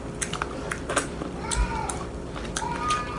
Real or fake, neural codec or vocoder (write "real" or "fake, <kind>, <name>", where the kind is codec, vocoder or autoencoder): real